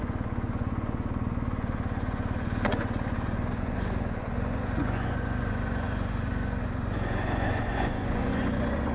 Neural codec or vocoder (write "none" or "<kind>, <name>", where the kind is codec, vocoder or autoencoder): vocoder, Vocos